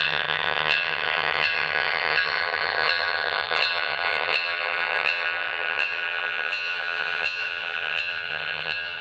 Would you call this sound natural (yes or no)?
no